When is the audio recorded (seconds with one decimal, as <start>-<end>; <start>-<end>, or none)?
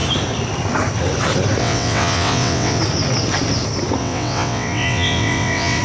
0.0-1.6; 2.8-4.0